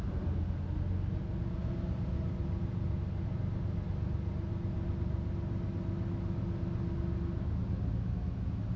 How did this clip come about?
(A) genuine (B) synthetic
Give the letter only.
A